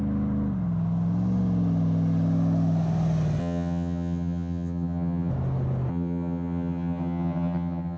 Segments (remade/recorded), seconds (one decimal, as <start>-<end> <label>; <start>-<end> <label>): 0.0-3.4 recorded; 3.4-5.3 remade; 5.3-5.9 recorded; 5.9-8.0 remade